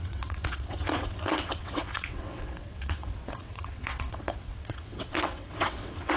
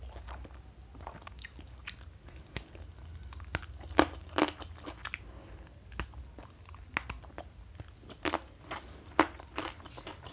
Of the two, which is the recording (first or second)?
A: second